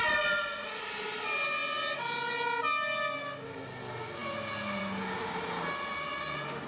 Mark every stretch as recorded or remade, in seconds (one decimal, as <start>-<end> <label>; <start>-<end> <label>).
0.0-6.7 recorded